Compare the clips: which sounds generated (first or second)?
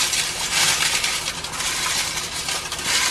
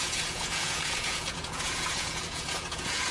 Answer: second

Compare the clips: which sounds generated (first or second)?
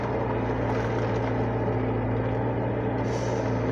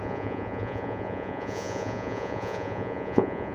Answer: second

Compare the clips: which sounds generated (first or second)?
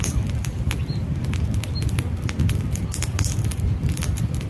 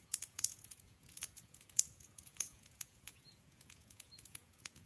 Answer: second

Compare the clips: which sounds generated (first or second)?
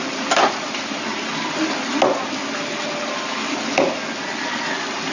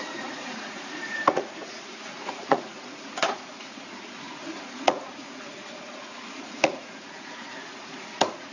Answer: second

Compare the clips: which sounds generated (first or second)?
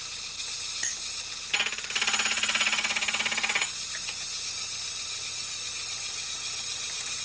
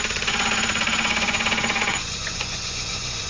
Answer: second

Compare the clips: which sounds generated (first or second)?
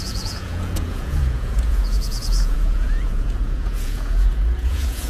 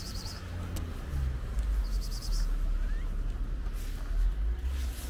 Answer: first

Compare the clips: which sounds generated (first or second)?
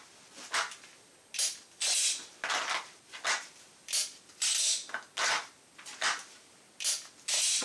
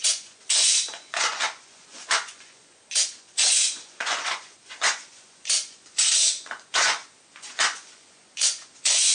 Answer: second